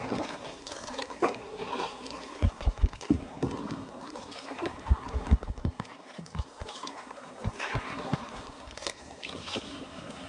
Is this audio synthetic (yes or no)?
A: yes